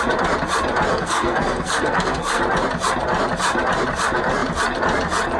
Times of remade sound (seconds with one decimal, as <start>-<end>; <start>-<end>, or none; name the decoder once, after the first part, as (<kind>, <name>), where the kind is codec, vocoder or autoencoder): 0.9-2.4 (codec, SNAC)